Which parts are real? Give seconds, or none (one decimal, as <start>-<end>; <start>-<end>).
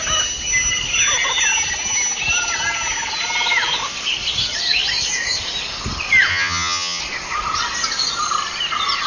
0.0-6.3; 7.0-9.1